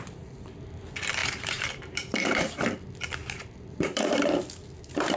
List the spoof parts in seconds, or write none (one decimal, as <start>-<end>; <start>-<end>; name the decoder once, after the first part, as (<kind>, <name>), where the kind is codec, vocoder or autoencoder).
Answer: 1.2-2.5 (vocoder, BigVGAN v2); 3.2-4.4